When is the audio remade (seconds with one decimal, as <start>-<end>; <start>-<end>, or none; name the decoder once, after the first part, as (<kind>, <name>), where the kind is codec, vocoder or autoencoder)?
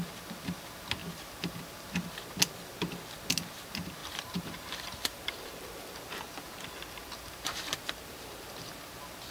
1.0-1.9 (vocoder, BigVGAN v2); 4.0-8.7